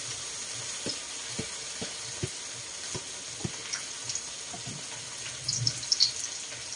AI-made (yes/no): no